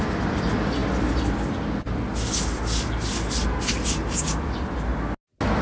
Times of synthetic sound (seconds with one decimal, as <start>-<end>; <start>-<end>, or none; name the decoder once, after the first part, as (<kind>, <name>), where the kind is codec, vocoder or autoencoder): none